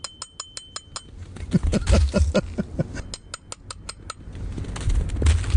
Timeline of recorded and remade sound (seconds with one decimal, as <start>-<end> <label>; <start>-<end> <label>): 0.0-5.6 recorded